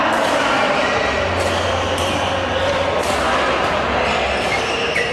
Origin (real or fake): real